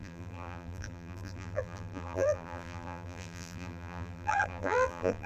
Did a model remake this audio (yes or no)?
yes